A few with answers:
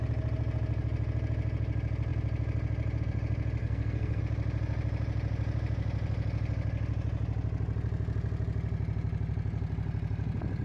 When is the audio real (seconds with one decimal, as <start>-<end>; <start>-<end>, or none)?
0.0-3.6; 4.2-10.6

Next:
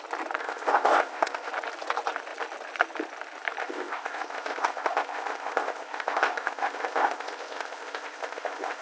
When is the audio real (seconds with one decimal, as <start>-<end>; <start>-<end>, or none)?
0.0-0.4; 1.5-3.6

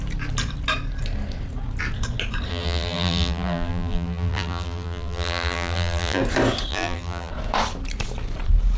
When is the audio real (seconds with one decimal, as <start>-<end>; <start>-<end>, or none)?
0.0-2.5; 6.2-6.7; 7.3-8.8